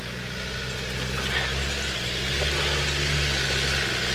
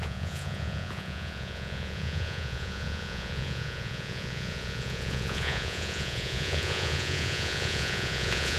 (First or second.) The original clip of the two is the first